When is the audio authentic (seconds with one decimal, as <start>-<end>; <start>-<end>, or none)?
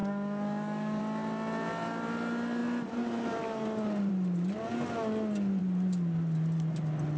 1.0-7.2